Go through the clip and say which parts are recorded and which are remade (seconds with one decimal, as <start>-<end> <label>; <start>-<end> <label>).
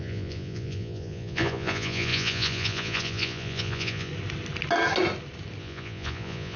0.0-4.1 remade; 4.1-5.6 recorded; 5.6-6.6 remade